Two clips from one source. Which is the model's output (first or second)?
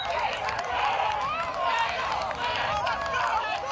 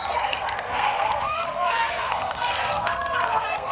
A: second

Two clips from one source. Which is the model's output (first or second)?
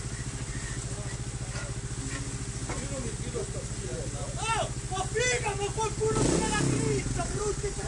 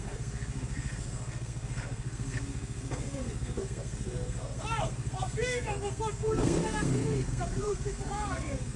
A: second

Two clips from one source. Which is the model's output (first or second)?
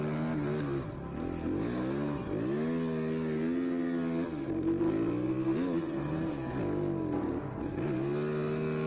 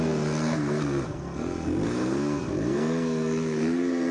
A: second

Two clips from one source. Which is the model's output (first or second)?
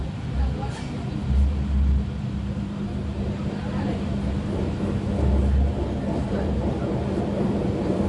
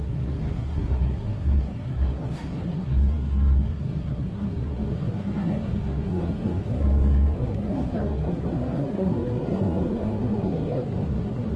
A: second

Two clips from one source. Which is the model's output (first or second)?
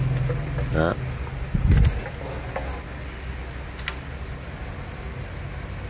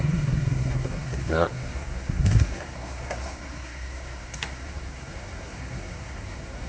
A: second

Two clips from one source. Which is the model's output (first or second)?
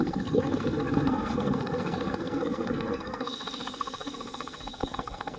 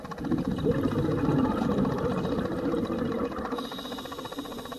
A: first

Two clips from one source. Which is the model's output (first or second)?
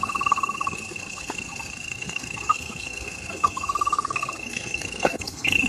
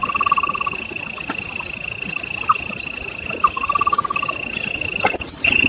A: first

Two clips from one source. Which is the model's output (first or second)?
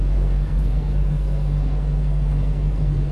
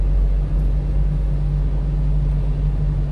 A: first